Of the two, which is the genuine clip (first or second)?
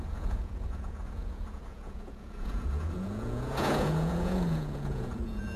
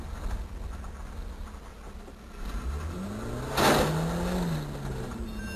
second